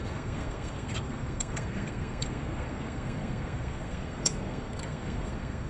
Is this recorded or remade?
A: remade